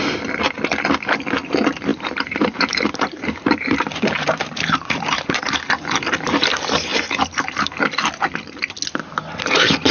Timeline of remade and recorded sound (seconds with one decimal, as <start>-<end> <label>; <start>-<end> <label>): 0.0-1.9 recorded; 1.9-5.6 remade; 5.6-6.9 recorded; 6.9-7.9 remade; 7.9-9.9 recorded